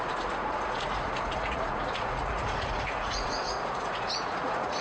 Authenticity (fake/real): fake